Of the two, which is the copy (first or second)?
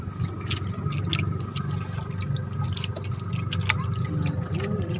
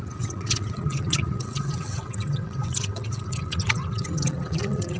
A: second